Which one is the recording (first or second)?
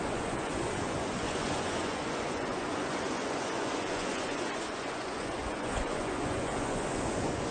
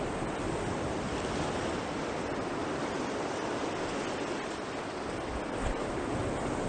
second